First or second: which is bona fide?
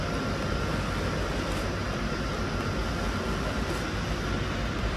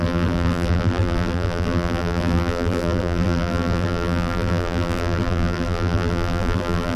first